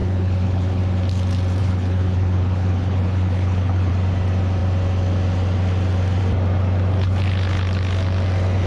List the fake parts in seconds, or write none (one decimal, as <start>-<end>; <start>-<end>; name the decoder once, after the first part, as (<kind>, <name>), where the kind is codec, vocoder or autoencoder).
0.0-0.8 (codec, HILCodec); 1.6-3.9